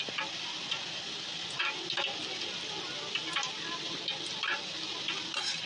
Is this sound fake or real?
real